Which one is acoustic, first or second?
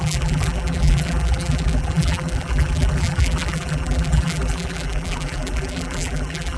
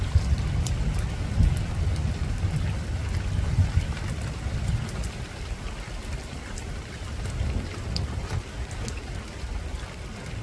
second